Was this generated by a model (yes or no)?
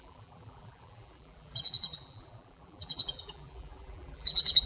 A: yes